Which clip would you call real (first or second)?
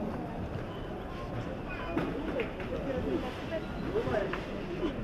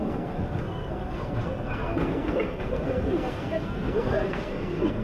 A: first